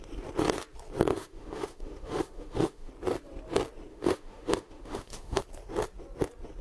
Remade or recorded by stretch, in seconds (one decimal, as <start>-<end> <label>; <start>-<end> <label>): 0.0-1.1 recorded; 1.1-2.9 remade; 2.9-3.9 recorded; 3.9-5.4 remade; 5.4-6.6 recorded